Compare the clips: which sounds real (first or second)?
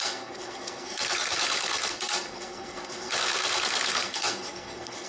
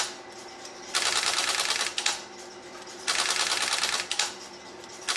second